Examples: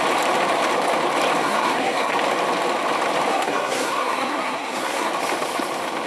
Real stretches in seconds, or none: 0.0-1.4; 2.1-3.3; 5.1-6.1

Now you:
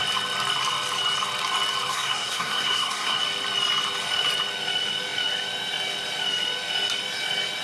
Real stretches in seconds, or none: 0.0-1.9; 3.2-7.6

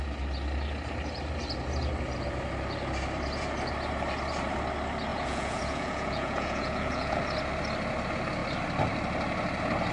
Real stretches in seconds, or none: 0.0-5.1; 7.2-9.9

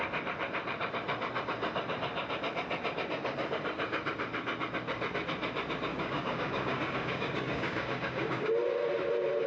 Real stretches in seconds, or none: 0.0-5.9; 8.5-9.5

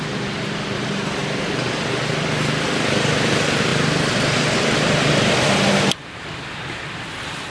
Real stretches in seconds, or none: 0.0-7.5

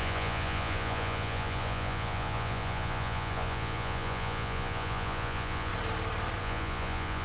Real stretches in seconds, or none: 5.7-6.4

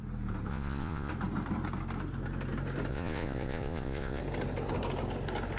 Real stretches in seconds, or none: 0.0-0.5; 1.1-2.9; 4.2-5.6

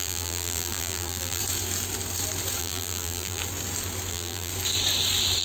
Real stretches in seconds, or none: 1.4-2.6; 3.4-4.1; 4.5-5.4